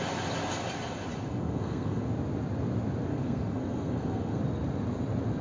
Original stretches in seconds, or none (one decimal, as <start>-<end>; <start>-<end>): 0.0-1.3; 2.1-3.1; 4.4-5.4